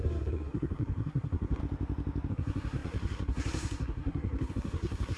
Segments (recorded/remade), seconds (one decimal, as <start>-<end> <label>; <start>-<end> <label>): 0.0-1.6 remade; 1.6-2.3 recorded; 2.3-5.2 remade